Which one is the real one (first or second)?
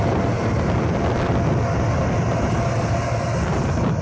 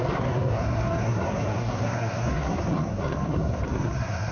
first